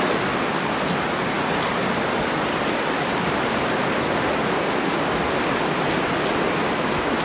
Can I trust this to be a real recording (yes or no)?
yes